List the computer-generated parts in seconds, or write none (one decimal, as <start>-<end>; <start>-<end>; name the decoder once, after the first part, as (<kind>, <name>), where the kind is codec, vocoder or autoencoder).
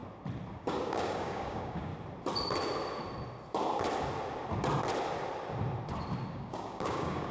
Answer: 0.5-1.9 (codec, DAC); 6.3-7.3